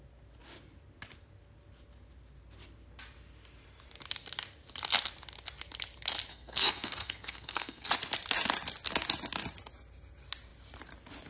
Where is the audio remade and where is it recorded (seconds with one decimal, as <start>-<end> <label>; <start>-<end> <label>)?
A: 0.0-6.3 recorded; 6.3-7.9 remade; 7.9-11.3 recorded